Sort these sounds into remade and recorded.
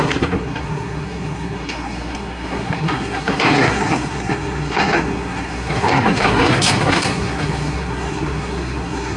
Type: remade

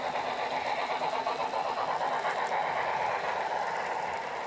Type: recorded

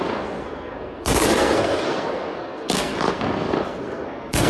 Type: remade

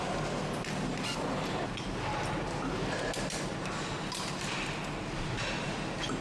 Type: recorded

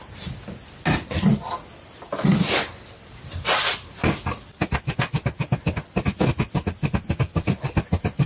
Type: recorded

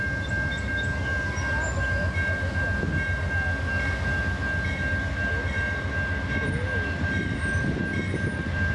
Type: recorded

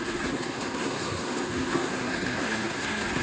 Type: remade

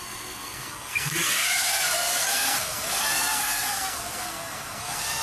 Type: remade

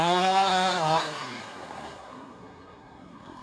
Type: remade